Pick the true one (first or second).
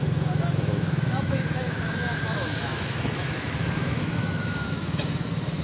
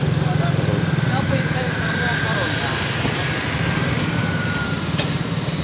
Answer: second